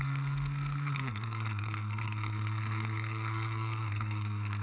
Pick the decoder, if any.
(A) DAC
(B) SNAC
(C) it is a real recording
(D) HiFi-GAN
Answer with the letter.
B